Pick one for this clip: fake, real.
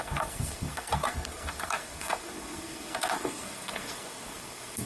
fake